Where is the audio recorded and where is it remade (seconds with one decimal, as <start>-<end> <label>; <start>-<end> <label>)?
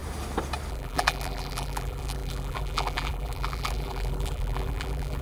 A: 0.0-0.7 recorded; 0.7-5.2 remade